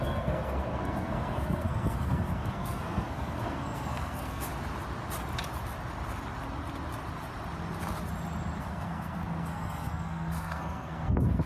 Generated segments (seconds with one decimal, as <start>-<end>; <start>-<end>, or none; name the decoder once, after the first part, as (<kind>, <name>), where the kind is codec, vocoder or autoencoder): 0.0-4.5 (codec, SNAC); 8.6-11.5